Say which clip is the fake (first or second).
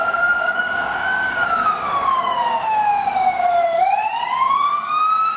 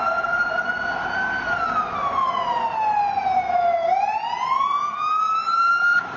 first